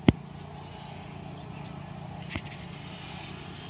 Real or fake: real